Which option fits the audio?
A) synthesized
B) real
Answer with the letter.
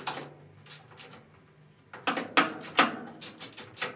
B